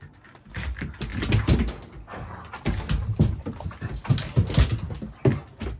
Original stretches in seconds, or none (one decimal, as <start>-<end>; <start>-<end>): 0.0-5.8